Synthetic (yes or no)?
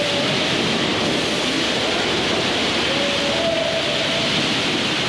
no